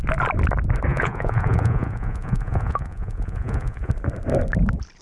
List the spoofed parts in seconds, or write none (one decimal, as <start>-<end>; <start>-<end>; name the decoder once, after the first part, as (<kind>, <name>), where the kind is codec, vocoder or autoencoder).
0.9-3.9 (vocoder, Vocos)